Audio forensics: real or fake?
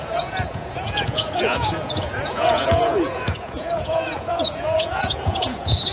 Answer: fake